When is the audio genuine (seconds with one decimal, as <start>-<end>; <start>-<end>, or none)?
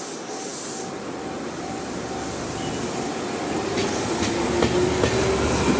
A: 0.0-5.8